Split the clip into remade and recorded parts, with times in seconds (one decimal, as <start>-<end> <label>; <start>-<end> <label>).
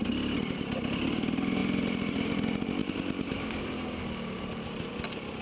0.0-5.4 recorded